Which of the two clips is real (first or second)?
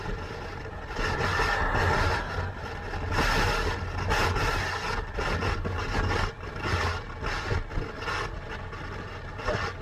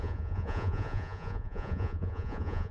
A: first